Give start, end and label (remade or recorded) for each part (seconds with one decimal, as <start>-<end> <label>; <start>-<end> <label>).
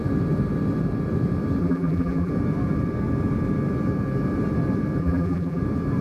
0.0-1.6 recorded; 1.6-2.3 remade; 2.3-5.0 recorded; 5.0-5.6 remade; 5.6-6.0 recorded